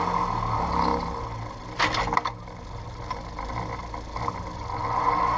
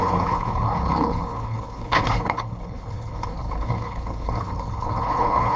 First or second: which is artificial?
second